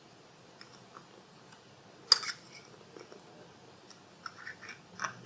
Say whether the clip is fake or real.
real